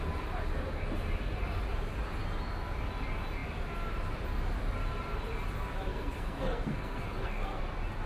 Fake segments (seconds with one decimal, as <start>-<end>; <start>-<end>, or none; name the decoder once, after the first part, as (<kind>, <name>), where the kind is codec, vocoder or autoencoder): 5.9-7.6 (codec, SNAC)